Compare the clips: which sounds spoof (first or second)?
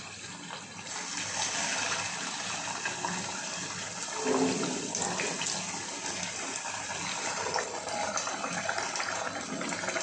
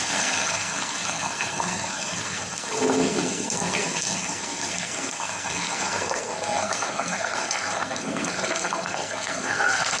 second